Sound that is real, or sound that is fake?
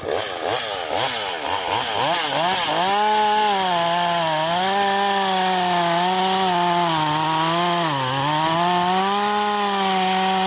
real